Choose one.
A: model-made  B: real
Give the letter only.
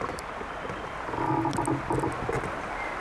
B